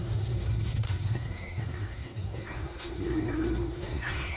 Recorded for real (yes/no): no